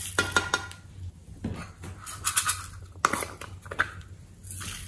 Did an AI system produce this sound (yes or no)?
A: no